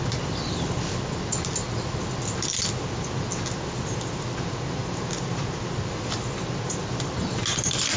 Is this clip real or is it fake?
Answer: real